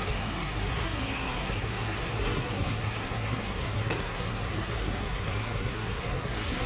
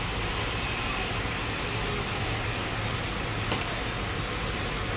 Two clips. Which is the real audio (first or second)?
second